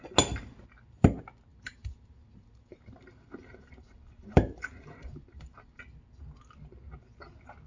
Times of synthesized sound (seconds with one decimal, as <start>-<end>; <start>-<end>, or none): 1.5-5.8